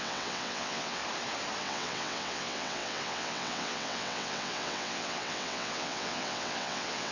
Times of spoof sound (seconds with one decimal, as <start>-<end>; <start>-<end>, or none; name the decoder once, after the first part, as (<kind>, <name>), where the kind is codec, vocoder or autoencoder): 0.0-1.0 (vocoder, WaveNeXt); 1.6-7.1